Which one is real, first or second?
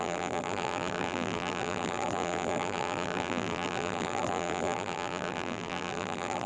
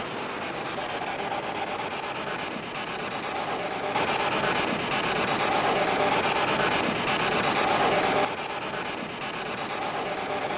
second